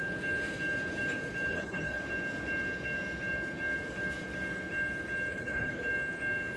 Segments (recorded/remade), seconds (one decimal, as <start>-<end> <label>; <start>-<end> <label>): 0.0-1.5 recorded; 1.5-2.0 remade; 2.0-5.3 recorded; 5.3-5.8 remade; 5.8-6.6 recorded